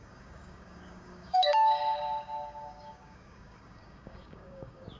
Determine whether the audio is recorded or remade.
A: remade